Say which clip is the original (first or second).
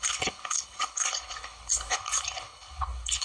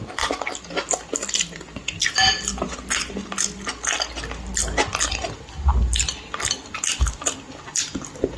second